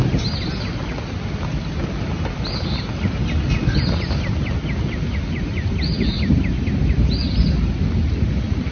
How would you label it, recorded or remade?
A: recorded